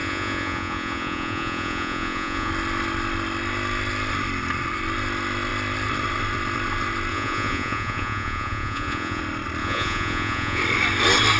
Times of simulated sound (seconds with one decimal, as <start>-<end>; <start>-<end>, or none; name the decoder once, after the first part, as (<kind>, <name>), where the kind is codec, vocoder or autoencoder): 0.0-2.5 (vocoder, Vocos); 7.1-9.2; 9.6-10.6